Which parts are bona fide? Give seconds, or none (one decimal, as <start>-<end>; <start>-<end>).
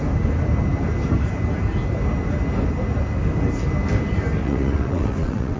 0.0-4.4